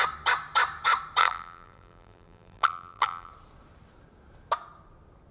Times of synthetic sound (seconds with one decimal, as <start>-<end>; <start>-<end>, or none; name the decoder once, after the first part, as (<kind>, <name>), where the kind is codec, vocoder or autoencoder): 1.2-3.3 (vocoder, BigVGAN v2)